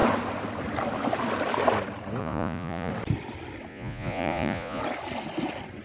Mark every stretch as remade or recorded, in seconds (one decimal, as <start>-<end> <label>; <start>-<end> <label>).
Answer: 0.0-2.2 recorded; 2.2-2.9 remade; 2.9-3.7 recorded; 3.7-4.8 remade; 4.8-5.8 recorded